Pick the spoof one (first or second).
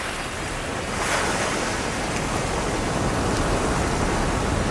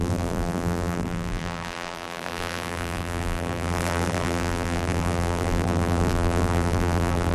second